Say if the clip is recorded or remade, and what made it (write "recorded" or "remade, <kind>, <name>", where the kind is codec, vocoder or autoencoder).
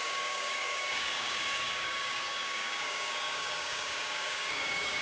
remade, codec, DAC